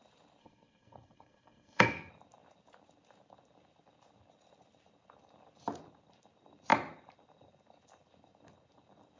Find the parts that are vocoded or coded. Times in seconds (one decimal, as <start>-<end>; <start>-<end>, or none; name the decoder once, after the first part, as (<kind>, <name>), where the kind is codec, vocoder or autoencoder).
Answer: 0.4-2.1 (codec, SNAC)